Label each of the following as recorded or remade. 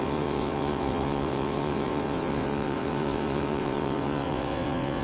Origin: remade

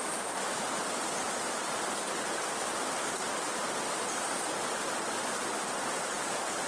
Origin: recorded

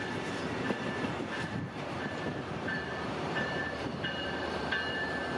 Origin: remade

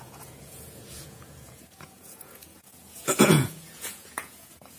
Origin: remade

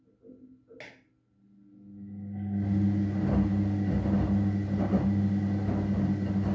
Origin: recorded